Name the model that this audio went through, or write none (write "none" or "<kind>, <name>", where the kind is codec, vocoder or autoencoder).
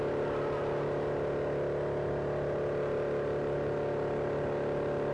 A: none